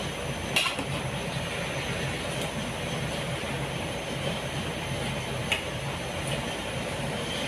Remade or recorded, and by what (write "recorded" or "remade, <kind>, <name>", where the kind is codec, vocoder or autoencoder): recorded